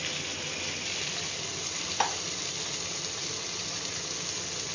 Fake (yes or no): no